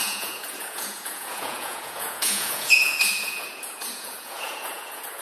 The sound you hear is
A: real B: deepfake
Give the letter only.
B